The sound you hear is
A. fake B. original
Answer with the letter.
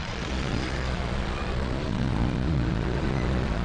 A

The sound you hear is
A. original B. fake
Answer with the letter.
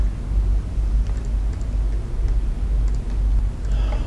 A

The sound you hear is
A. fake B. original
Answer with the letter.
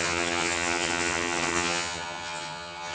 A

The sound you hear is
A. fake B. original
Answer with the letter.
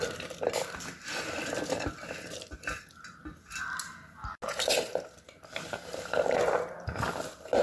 B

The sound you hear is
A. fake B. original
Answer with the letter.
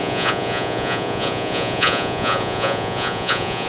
A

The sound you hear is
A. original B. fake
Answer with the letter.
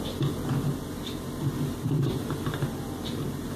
A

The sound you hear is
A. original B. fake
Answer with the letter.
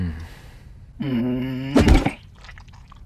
A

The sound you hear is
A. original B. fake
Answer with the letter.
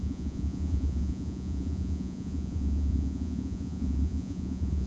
B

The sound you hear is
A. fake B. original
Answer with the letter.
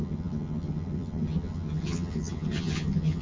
A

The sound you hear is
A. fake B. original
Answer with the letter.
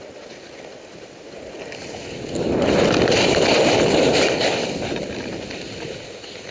B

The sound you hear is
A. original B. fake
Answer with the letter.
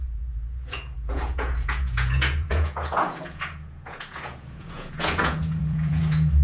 B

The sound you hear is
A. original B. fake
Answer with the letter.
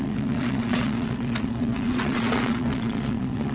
B